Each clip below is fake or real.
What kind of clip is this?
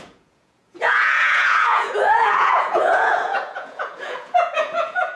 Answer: fake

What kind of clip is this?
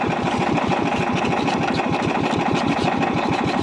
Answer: real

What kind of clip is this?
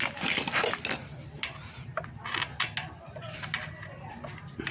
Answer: real